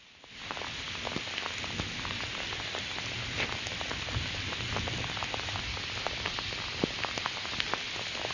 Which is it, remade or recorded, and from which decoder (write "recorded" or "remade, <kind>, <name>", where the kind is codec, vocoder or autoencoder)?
recorded